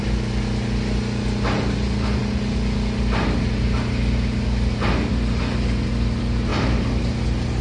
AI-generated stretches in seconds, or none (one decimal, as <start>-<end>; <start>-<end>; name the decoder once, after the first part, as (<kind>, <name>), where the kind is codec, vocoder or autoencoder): none